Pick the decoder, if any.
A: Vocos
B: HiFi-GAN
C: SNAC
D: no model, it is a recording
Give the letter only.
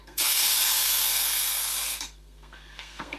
C